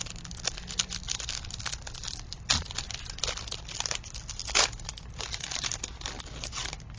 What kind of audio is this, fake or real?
real